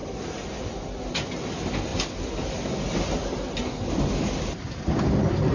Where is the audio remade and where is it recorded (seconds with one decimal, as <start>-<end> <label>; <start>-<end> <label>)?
0.0-5.5 recorded